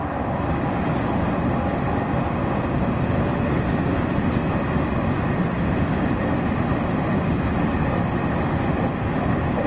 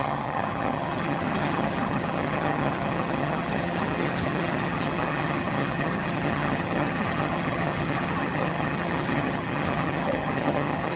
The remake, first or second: second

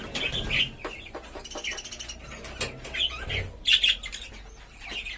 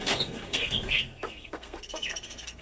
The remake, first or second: second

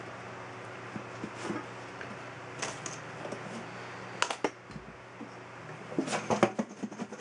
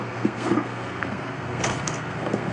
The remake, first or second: second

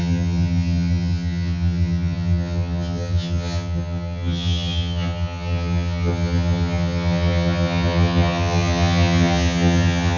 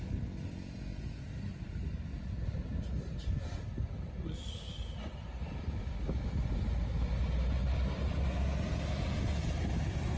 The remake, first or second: first